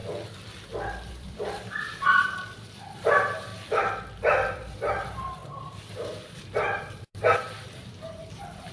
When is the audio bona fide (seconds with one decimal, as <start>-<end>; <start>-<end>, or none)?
0.0-1.1; 3.5-4.2